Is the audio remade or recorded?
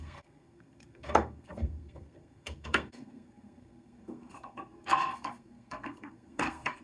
remade